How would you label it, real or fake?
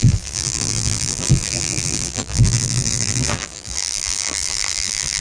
fake